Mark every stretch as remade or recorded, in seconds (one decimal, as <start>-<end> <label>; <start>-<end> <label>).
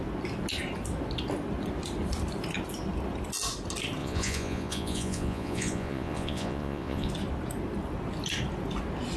0.0-4.0 recorded; 4.0-7.1 remade; 7.1-9.2 recorded